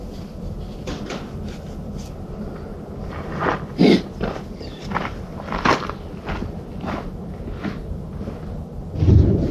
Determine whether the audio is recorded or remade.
recorded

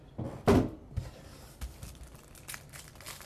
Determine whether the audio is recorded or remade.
recorded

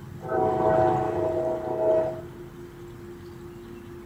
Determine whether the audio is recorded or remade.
recorded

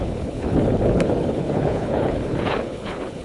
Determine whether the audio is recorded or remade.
remade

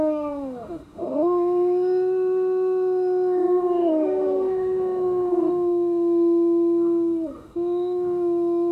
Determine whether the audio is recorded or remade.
remade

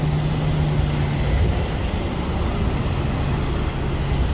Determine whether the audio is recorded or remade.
recorded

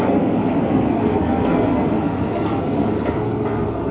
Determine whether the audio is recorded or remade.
remade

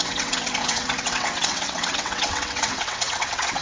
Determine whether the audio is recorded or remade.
remade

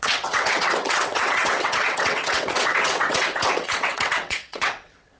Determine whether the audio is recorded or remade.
remade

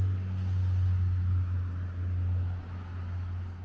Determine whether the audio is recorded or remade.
recorded